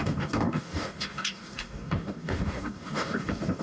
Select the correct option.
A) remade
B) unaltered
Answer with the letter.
A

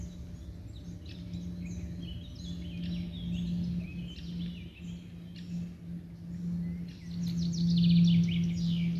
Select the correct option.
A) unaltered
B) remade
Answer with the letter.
A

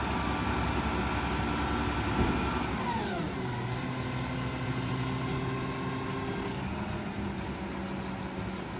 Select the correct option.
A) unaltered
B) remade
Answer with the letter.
A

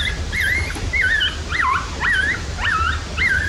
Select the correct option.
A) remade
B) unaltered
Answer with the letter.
B